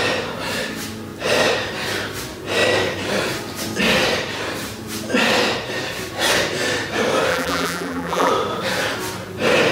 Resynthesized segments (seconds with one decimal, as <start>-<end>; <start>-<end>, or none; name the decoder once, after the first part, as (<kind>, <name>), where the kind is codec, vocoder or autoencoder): 7.3-8.3 (vocoder, BigVGAN v2)